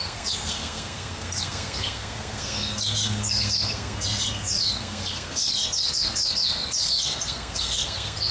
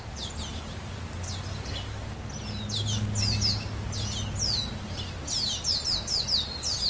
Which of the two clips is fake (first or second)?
first